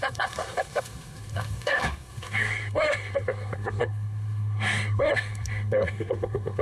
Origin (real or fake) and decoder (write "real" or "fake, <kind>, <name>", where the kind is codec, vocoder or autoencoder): fake, codec, SNAC